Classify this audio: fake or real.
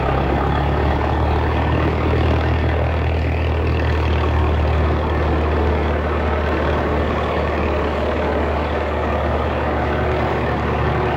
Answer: fake